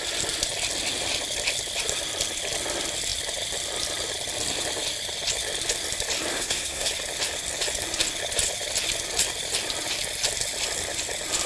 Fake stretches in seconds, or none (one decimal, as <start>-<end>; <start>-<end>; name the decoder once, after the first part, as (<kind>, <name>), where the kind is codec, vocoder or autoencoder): 6.3-6.9 (codec, SNAC)

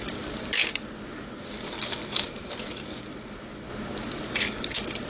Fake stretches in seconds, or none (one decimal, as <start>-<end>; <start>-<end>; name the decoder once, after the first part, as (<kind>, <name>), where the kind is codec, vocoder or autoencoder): none

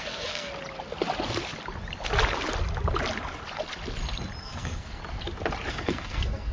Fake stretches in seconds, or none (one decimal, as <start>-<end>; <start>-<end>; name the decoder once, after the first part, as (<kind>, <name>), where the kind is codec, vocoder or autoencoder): 0.0-0.5 (codec, SNAC); 4.4-5.0; 5.7-6.5

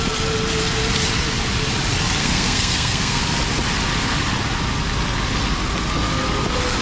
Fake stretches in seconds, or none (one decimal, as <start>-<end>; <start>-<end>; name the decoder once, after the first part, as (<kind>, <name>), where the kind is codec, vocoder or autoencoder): 2.2-3.2 (codec, SNAC)

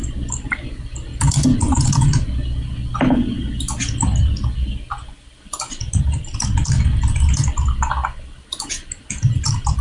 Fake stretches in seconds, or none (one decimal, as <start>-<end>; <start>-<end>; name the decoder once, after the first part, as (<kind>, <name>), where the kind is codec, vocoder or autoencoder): none

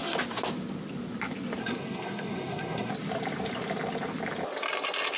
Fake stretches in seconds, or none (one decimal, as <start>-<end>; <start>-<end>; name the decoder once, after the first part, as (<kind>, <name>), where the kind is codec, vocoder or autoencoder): 1.6-2.9 (codec, SNAC)

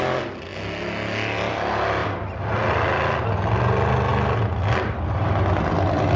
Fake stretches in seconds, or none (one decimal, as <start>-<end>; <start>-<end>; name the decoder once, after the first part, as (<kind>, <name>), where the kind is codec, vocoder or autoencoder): none